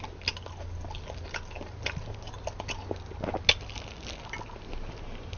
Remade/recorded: recorded